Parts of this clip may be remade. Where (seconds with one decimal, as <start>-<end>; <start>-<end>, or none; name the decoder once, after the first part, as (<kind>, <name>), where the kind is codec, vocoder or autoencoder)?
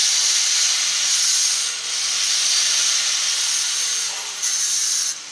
3.9-5.3 (vocoder, BigVGAN v2)